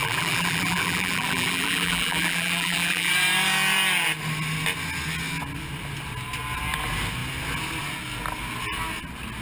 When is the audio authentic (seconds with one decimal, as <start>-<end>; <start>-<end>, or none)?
3.1-9.4